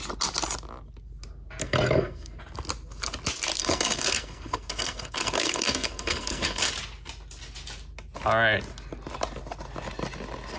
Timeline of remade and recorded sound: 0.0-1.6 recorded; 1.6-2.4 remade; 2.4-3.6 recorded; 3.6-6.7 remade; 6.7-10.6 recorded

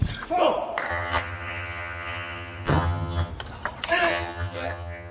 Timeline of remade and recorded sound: 0.0-0.9 recorded; 0.9-3.3 remade; 3.3-4.1 recorded; 4.1-5.1 remade

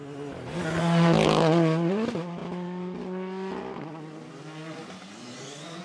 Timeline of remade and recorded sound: 0.0-5.8 recorded

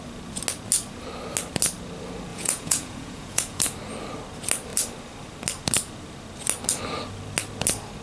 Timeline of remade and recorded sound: 0.0-2.3 recorded; 2.3-3.6 remade; 3.6-8.0 recorded

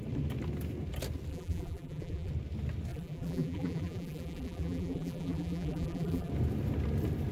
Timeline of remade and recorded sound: 0.0-1.3 recorded; 1.3-2.3 remade; 2.3-2.9 recorded; 2.9-6.3 remade; 6.3-7.3 recorded

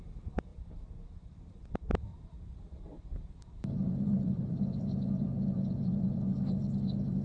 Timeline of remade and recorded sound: 0.0-0.5 recorded; 0.5-1.6 remade; 1.6-2.1 recorded; 2.1-6.4 remade; 6.4-7.2 recorded

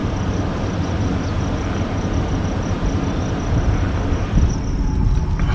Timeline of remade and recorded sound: 0.0-5.5 recorded

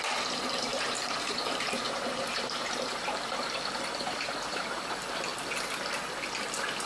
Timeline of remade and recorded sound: 0.0-0.7 recorded; 0.7-4.8 remade; 4.8-6.9 recorded